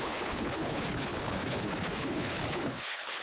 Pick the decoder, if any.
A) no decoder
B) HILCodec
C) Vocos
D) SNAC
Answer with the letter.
B